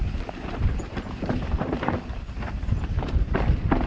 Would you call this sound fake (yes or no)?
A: yes